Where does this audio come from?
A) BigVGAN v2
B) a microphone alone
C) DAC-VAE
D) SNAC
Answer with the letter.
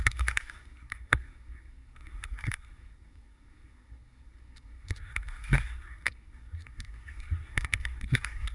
D